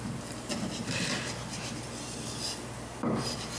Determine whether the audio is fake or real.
real